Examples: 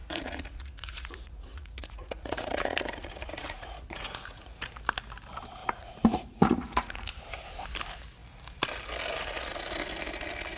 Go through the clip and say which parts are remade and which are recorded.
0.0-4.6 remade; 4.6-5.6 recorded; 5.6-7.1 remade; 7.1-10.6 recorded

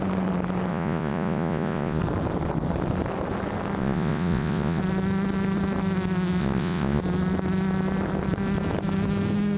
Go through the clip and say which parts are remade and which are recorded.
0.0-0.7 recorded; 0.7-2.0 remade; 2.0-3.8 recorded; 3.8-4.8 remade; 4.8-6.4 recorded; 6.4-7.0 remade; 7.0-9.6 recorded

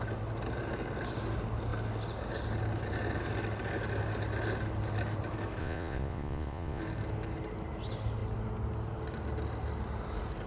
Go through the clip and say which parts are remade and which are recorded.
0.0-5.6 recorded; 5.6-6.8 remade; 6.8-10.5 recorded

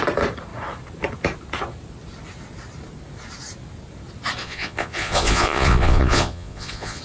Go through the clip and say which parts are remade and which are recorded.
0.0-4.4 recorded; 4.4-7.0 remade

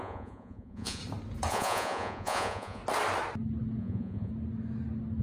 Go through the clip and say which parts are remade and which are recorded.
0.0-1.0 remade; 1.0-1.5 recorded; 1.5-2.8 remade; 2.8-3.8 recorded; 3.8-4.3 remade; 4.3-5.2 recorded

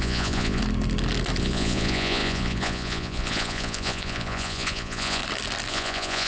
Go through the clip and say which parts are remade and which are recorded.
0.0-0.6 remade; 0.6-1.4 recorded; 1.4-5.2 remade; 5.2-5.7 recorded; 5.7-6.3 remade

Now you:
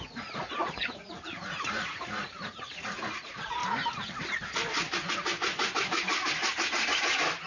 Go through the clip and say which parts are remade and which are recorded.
0.0-3.6 remade; 3.6-7.5 recorded

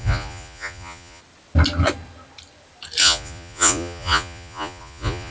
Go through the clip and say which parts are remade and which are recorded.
0.0-1.2 remade; 1.2-3.0 recorded; 3.0-5.3 remade